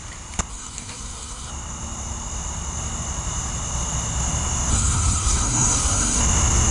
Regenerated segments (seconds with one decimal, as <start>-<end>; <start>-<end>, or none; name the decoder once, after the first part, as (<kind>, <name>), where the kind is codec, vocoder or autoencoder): 0.5-1.5 (codec, SNAC); 4.7-6.2